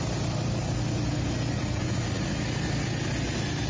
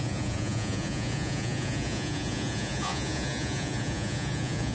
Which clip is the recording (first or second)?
first